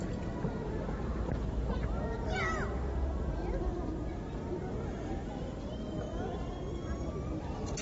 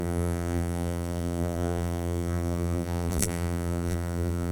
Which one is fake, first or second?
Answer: second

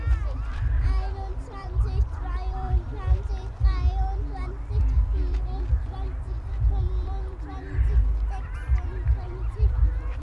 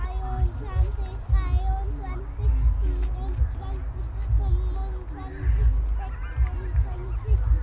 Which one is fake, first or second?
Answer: first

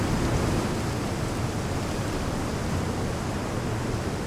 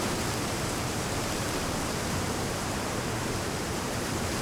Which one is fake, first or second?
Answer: second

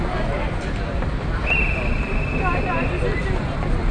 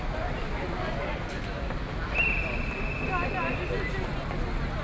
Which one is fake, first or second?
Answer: first